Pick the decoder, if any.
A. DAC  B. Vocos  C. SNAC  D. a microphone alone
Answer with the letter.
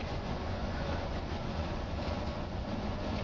B